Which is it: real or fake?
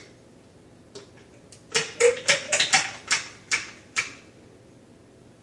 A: real